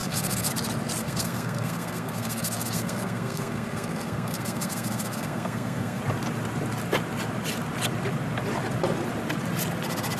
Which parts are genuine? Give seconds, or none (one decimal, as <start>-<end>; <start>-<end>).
0.5-1.0; 6.0-10.2